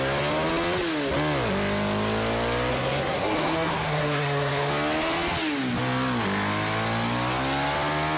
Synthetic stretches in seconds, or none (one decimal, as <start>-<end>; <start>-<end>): 2.7-4.7